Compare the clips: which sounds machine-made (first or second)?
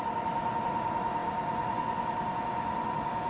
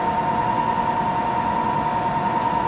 first